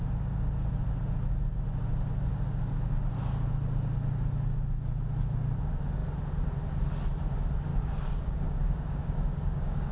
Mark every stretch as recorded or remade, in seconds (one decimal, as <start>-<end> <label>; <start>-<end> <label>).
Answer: 0.0-7.7 recorded; 7.7-9.9 remade